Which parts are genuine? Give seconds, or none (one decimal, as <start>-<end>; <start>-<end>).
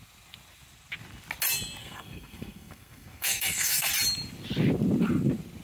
0.0-1.8; 3.9-5.6